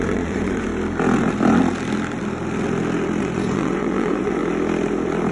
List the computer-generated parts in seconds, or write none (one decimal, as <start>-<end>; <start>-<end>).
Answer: 0.0-0.7; 3.2-4.4